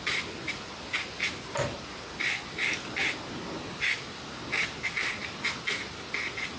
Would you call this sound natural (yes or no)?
yes